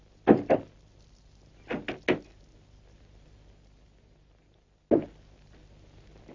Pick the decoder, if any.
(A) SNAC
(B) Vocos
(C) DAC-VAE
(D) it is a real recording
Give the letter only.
D